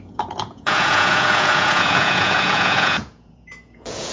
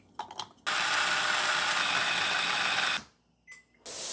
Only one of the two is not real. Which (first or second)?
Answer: first